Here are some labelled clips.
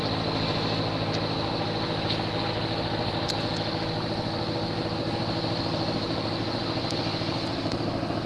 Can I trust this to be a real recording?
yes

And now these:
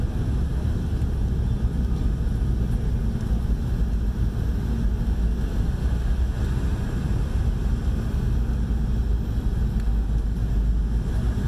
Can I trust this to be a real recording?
yes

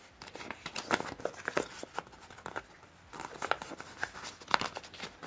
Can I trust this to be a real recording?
no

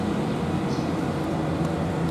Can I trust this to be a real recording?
no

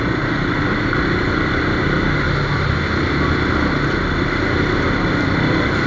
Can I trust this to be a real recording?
yes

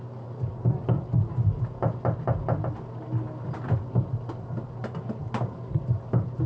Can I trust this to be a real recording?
yes